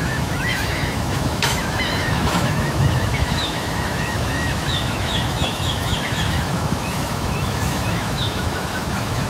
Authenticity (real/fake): fake